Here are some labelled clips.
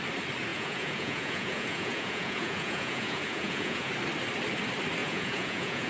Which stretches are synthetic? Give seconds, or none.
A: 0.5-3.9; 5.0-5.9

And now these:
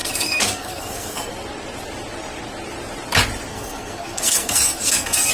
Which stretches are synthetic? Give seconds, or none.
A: 0.0-1.3; 3.5-5.3

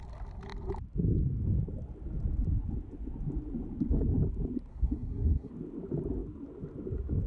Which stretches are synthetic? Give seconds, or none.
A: 4.7-5.5

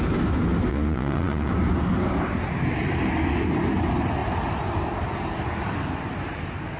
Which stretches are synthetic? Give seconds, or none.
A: 0.7-1.5

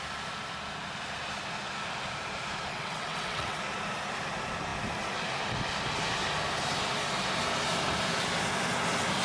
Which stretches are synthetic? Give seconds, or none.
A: 2.7-3.6